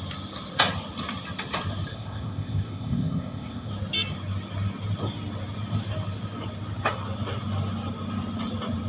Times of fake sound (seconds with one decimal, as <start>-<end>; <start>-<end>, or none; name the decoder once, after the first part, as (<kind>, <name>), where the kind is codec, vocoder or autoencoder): 1.9-3.7 (codec, ZipCodec)